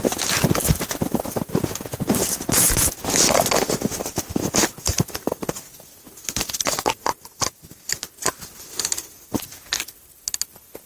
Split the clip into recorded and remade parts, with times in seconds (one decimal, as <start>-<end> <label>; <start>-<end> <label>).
0.0-10.9 recorded